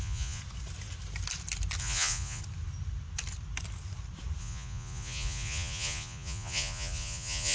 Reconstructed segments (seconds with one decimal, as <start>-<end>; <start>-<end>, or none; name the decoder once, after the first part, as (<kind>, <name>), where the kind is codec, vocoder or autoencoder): 0.0-0.4 (vocoder, Vocos); 1.8-2.4; 4.4-7.5